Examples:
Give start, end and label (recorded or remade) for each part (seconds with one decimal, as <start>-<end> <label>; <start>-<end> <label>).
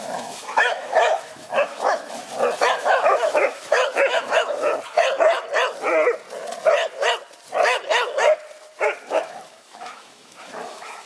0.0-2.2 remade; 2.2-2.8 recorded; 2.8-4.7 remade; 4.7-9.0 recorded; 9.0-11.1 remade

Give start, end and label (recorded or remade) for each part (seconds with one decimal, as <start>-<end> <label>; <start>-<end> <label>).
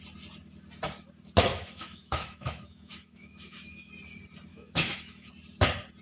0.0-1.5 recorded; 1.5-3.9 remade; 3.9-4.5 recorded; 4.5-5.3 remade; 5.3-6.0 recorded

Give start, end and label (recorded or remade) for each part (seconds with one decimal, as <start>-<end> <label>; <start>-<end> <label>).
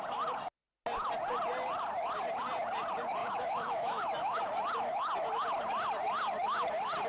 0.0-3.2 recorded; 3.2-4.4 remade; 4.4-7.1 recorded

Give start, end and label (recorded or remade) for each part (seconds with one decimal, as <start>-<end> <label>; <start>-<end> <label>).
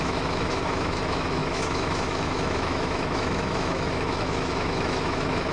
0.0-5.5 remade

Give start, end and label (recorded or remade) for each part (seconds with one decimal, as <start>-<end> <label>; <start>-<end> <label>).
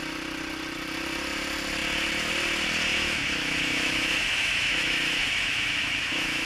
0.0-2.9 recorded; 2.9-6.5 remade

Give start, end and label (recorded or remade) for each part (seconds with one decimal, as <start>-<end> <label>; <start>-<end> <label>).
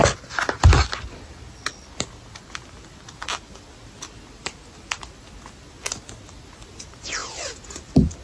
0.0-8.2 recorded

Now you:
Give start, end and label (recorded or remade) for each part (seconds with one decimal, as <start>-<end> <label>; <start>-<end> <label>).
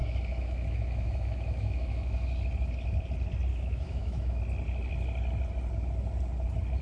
0.0-2.3 remade; 2.3-3.5 recorded; 3.5-4.4 remade; 4.4-6.8 recorded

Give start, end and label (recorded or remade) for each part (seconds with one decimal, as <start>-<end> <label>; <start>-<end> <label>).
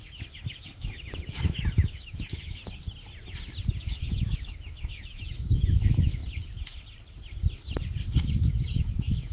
0.0-2.6 remade; 2.6-3.8 recorded; 3.8-6.2 remade; 6.2-8.2 recorded; 8.2-9.3 remade